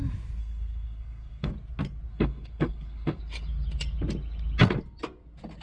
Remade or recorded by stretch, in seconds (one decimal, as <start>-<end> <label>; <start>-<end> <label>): 0.0-0.4 recorded; 0.4-1.5 remade; 1.5-2.1 recorded; 2.1-3.2 remade; 3.2-5.6 recorded